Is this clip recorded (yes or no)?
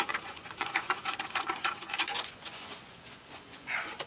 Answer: no